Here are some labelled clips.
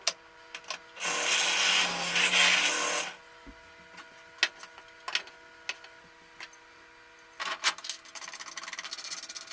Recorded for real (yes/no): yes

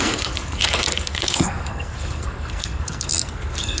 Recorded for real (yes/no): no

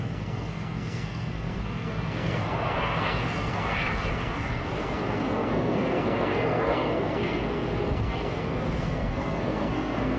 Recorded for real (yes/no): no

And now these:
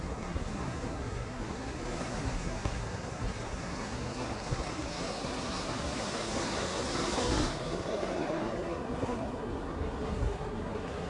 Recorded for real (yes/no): no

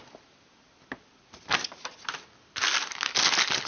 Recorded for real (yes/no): yes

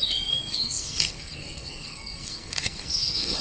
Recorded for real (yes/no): no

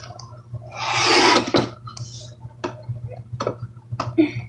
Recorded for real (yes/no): yes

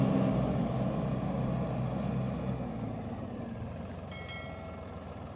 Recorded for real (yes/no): yes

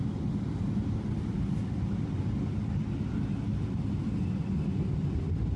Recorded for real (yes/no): yes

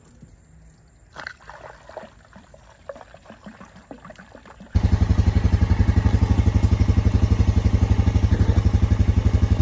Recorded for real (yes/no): yes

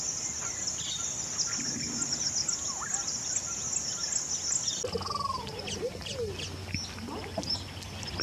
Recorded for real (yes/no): yes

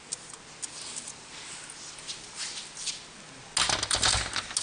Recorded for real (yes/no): yes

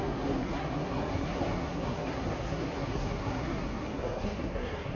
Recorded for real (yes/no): no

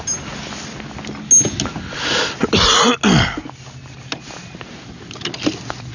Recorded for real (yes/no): yes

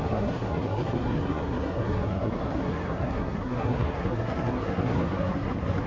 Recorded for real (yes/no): no